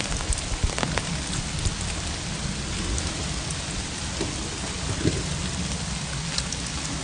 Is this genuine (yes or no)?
yes